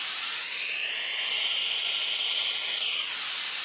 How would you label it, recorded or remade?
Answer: recorded